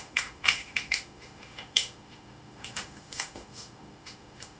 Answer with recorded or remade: remade